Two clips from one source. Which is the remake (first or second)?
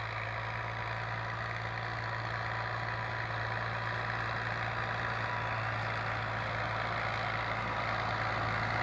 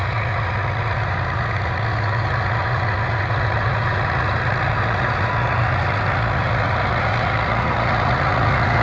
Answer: second